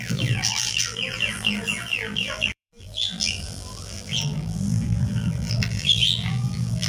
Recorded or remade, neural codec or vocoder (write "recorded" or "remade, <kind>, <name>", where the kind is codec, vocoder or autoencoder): remade, vocoder, BigVGAN v2